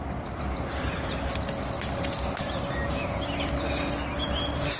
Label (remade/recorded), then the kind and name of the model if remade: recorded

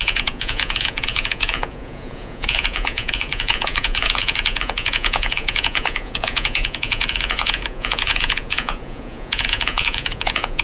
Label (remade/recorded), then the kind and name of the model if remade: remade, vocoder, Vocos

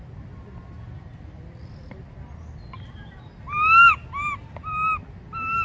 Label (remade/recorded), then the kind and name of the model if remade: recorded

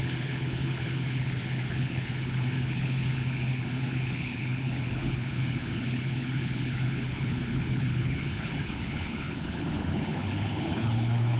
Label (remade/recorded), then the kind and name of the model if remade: remade, codec, HILCodec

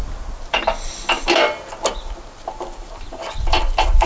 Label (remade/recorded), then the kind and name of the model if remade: recorded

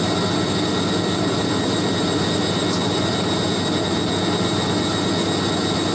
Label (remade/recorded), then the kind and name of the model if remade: recorded